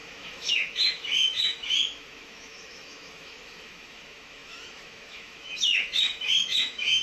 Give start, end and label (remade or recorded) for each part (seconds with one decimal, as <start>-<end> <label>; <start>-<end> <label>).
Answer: 0.0-7.0 remade